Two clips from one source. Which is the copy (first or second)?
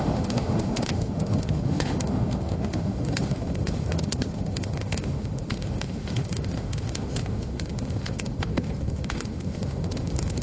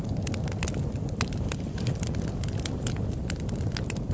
first